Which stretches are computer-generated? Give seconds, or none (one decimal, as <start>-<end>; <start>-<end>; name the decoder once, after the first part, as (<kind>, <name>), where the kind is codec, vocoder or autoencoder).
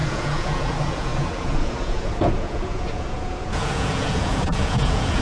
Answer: 0.0-5.2 (vocoder, Vocos)